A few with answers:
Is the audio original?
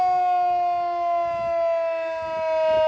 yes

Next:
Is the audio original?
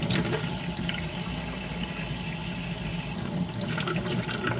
yes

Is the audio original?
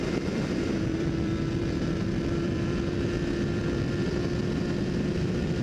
no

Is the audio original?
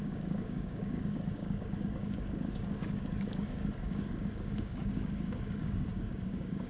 no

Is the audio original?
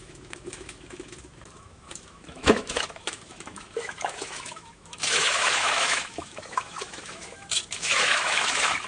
no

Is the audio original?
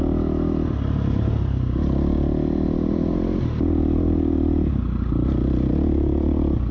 yes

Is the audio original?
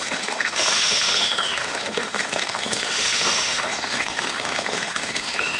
no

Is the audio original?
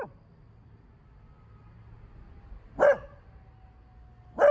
yes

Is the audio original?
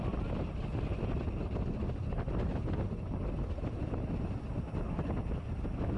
yes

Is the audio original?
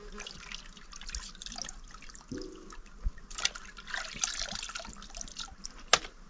yes